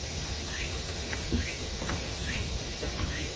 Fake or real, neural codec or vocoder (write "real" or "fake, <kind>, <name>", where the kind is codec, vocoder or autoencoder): fake, autoencoder, DAC-VAE